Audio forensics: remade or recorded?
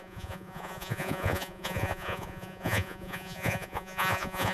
remade